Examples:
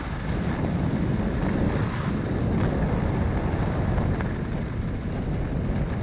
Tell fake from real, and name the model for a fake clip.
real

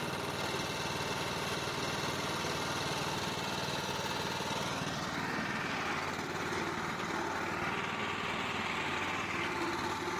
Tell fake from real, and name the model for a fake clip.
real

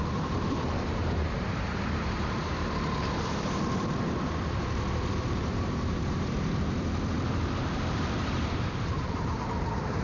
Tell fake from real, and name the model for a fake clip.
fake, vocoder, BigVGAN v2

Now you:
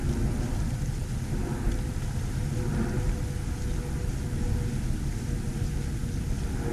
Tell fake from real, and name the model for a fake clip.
real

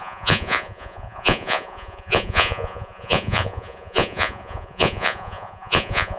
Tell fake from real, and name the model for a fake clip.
fake, vocoder, Vocos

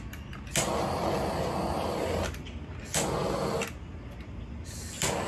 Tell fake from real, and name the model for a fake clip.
real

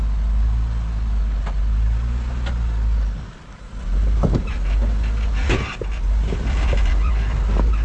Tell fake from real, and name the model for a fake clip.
real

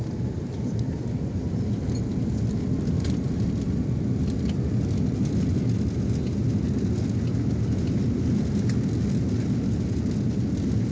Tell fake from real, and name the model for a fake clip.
real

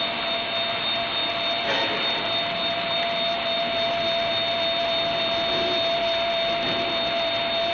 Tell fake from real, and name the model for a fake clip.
real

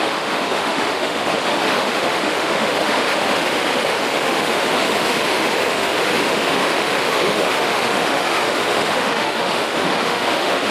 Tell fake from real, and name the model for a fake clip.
fake, autoencoder, DAC-VAE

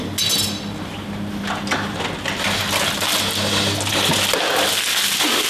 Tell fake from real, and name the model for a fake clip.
real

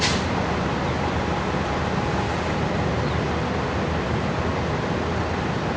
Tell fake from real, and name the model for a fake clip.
real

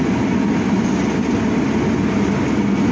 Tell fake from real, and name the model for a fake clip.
real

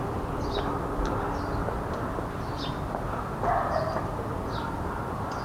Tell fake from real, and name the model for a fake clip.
real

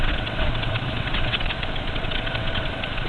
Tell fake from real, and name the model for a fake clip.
fake, vocoder, WaveNeXt